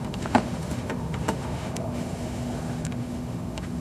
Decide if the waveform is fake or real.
fake